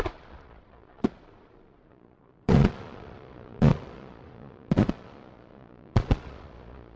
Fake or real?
fake